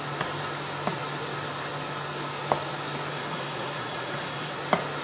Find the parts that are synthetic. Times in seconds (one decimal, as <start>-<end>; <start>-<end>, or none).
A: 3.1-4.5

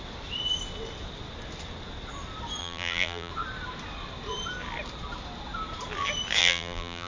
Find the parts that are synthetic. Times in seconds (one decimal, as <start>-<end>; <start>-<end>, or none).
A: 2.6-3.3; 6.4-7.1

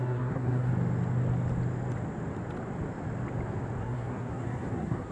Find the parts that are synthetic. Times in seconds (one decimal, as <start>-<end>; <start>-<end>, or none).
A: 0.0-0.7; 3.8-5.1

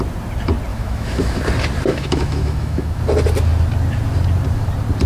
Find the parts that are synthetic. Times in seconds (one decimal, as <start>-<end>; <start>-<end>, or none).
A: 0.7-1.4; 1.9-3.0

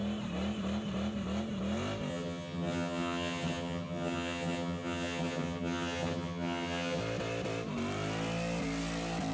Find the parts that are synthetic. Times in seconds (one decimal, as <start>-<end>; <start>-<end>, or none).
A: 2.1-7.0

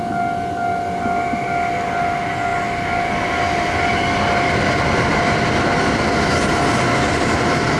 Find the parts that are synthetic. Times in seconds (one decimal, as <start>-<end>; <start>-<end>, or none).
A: none

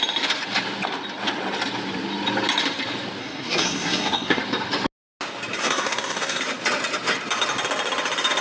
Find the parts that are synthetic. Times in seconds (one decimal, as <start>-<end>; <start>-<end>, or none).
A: 3.2-4.4; 5.6-6.4